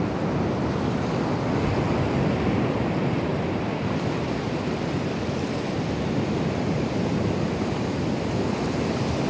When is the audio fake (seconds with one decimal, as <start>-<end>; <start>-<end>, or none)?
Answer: 3.3-7.3